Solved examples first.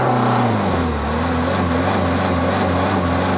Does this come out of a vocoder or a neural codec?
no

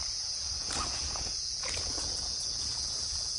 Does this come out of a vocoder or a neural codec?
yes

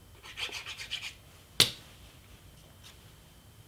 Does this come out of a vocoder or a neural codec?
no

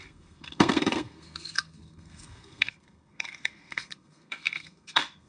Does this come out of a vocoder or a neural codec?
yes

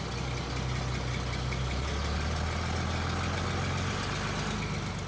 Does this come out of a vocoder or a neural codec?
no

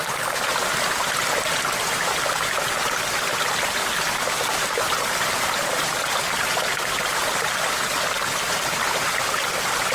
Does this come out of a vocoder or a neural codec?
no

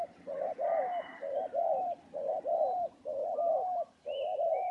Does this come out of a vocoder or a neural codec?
no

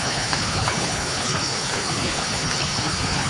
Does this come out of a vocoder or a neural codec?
yes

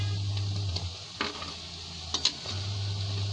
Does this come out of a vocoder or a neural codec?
no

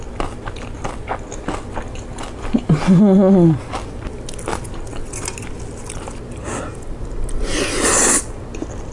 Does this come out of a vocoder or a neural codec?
no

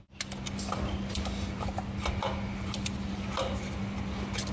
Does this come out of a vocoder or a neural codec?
no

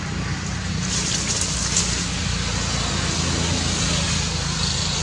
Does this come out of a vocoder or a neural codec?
no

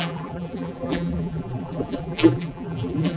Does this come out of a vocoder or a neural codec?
yes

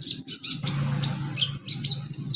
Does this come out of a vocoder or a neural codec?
no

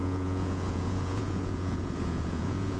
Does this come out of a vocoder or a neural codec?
yes